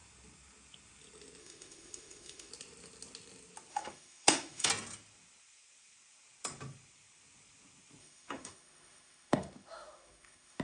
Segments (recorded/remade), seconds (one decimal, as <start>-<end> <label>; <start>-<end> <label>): 0.0-1.4 recorded; 1.4-2.5 remade; 2.5-3.7 recorded; 3.7-4.7 remade; 4.7-8.0 recorded; 8.0-10.6 remade